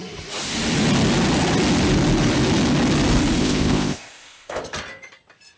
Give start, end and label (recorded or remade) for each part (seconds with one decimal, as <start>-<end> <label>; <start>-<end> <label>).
0.0-3.4 recorded; 3.4-4.6 remade; 4.6-5.6 recorded